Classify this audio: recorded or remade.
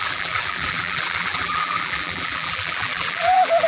remade